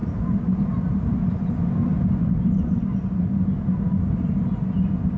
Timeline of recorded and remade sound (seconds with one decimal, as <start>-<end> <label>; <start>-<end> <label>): 0.0-5.2 recorded